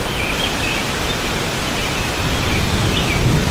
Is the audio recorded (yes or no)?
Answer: yes